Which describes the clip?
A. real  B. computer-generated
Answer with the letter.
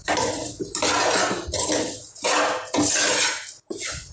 A